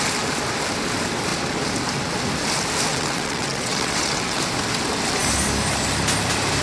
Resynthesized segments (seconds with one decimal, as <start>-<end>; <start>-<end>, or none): 2.9-4.4